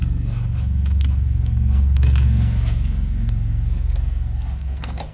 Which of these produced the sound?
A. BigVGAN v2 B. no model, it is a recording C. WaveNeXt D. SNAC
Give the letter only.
D